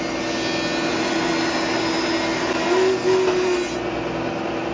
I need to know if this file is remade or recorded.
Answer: recorded